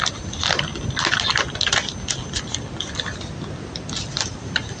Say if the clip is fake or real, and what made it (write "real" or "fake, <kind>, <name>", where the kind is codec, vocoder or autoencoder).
real